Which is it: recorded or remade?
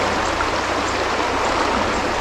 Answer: recorded